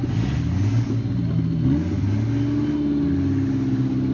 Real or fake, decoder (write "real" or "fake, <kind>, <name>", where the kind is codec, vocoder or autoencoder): real